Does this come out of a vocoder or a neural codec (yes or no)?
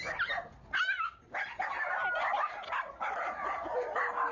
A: no